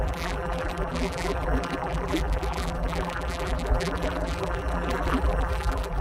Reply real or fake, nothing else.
fake